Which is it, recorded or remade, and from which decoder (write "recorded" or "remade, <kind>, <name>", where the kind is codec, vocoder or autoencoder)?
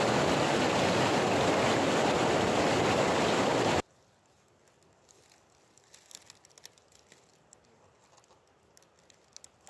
recorded